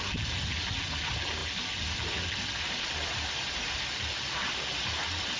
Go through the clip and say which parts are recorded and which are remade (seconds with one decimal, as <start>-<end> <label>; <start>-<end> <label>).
0.0-5.4 recorded